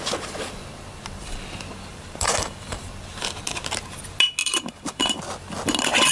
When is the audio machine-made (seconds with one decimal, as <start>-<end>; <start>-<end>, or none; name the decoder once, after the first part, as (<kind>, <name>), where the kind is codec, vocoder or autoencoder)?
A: 1.9-2.8 (vocoder, BigVGAN v2); 4.4-5.2